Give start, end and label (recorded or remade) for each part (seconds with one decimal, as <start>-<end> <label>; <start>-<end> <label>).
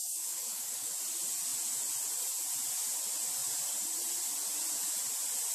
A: 0.0-0.9 remade; 0.9-5.5 recorded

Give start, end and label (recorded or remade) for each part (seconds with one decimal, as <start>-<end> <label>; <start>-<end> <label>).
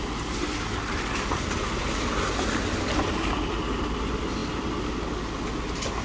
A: 0.0-6.0 recorded